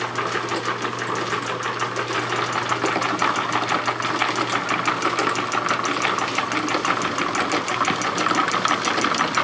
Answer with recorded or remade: recorded